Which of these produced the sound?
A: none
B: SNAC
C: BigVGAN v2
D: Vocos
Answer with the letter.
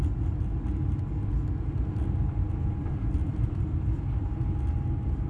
A